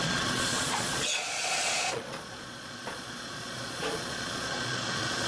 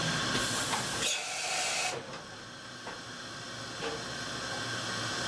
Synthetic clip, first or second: first